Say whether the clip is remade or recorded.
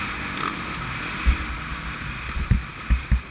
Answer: recorded